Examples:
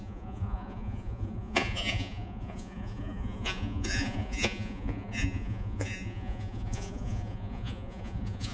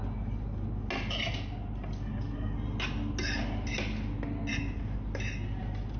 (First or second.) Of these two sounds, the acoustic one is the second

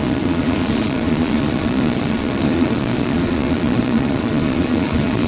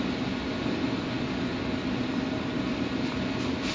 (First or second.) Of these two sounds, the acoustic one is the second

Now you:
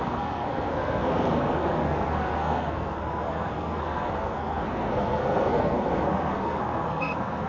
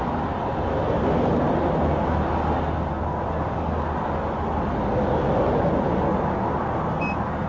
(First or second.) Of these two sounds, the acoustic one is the second